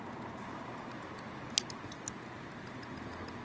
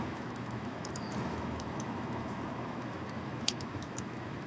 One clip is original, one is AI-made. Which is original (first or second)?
first